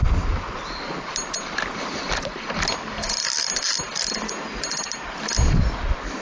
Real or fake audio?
real